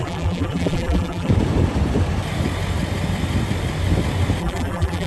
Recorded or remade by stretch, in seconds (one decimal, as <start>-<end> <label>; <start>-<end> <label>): 0.0-1.3 remade; 1.3-4.4 recorded; 4.4-5.1 remade